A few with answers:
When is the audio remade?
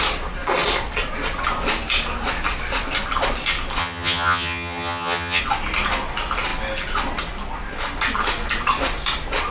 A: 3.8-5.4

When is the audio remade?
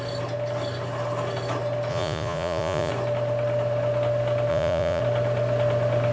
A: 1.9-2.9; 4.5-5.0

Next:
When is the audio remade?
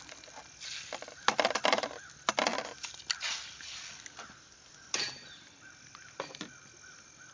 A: none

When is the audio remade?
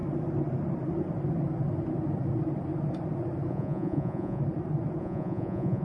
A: 3.5-4.4; 5.0-5.8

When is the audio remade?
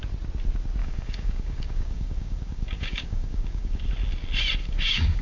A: 0.8-3.9; 4.6-5.2